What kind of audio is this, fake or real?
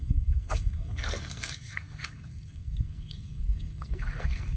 fake